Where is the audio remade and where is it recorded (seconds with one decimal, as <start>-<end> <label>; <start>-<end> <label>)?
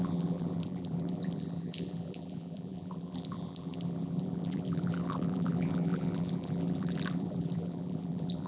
0.0-8.5 remade